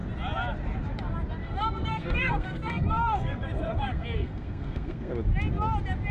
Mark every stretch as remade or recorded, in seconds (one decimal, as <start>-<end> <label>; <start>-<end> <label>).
0.0-1.4 recorded; 1.4-5.1 remade; 5.1-6.1 recorded